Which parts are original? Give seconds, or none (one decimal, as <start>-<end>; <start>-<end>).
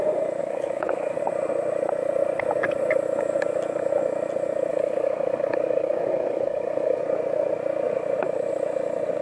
0.0-0.4; 1.2-4.7; 7.0-9.2